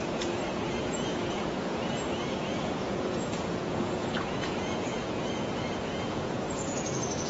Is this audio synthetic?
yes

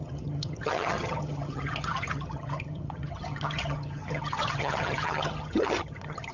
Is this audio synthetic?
yes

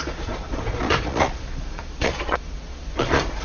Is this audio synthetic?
yes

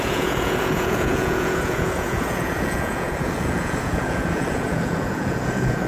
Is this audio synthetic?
yes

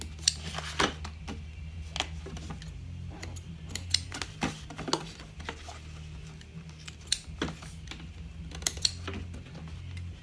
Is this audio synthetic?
no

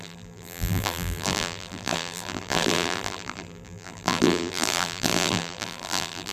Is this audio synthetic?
yes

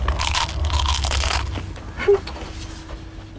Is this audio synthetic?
no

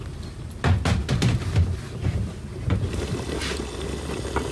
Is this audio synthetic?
no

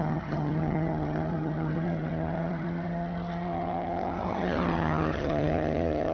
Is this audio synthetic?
yes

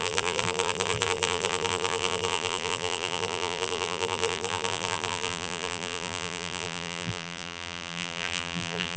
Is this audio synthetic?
yes